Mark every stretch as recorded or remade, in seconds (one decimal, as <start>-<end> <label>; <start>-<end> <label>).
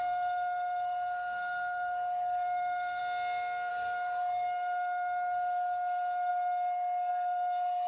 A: 0.0-3.0 remade; 3.0-3.7 recorded; 3.7-7.9 remade